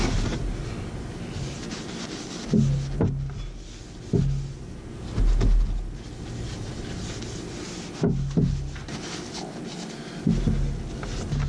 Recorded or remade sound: recorded